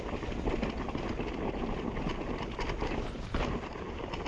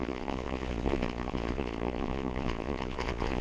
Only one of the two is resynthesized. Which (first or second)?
second